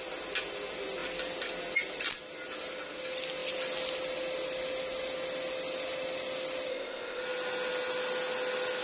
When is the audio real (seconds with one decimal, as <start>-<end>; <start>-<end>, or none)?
0.0-6.7; 7.2-8.8